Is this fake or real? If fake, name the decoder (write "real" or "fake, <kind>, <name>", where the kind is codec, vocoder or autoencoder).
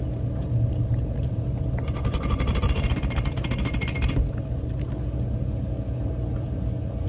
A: real